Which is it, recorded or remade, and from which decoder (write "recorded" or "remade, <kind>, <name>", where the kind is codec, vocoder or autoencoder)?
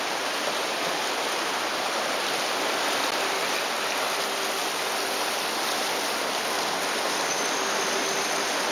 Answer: recorded